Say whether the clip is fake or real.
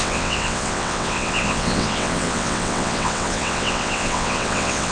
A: fake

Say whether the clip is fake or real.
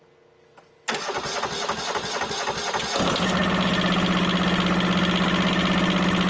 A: real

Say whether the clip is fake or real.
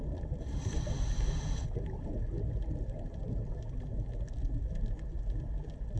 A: real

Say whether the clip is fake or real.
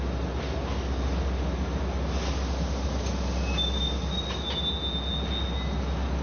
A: real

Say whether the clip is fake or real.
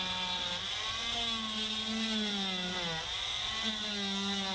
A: real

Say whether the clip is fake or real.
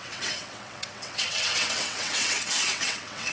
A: fake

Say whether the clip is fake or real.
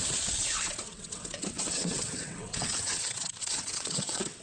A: fake